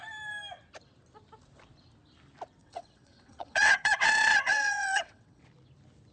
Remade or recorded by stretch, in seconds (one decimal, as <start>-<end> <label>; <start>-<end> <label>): 0.0-2.6 recorded; 2.6-5.4 remade; 5.4-6.1 recorded